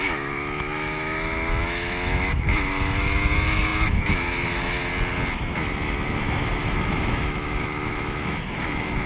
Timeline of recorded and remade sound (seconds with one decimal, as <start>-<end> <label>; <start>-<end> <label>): 0.0-4.9 remade; 4.9-6.6 recorded; 6.6-9.1 remade